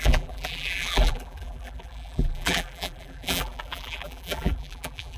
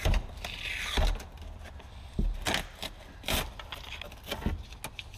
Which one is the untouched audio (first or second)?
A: second